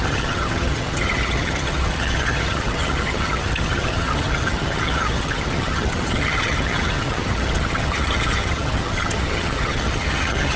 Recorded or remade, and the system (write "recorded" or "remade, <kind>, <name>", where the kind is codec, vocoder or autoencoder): remade, vocoder, HiFi-GAN